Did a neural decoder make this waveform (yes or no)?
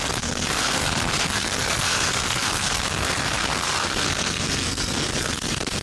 yes